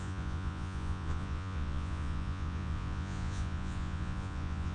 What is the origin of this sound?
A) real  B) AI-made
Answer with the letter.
B